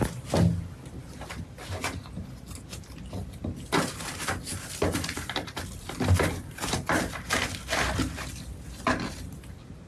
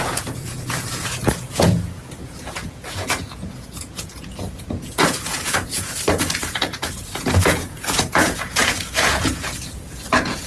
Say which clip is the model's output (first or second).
second